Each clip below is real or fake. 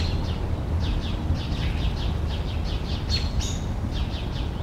real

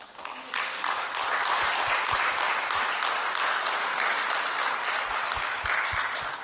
real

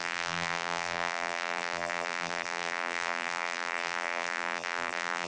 fake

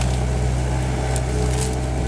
real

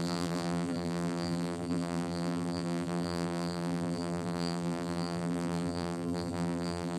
fake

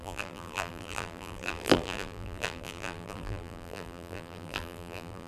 fake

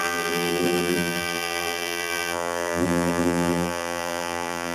fake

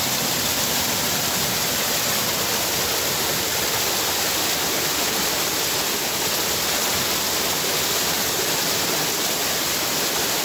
real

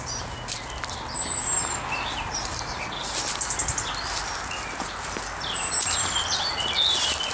fake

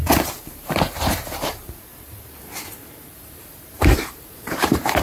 fake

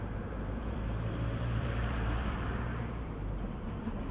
fake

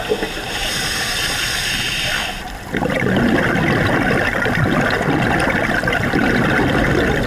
real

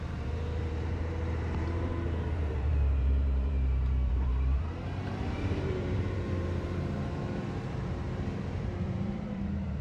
fake